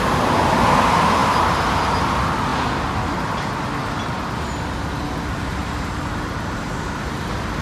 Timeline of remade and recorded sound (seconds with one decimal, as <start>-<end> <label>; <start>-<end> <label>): 0.0-1.2 recorded; 1.2-2.0 remade; 2.0-5.6 recorded; 5.6-7.1 remade; 7.1-7.6 recorded